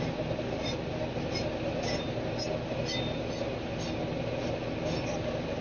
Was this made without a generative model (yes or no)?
yes